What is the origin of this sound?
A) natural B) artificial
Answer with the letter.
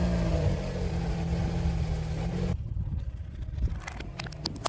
A